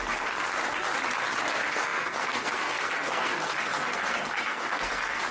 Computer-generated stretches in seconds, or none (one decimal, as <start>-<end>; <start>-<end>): 0.0-0.6; 1.5-5.3